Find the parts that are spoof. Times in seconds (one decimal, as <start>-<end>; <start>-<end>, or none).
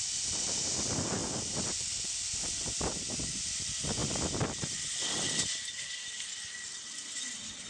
none